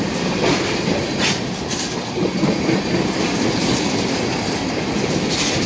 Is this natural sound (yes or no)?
yes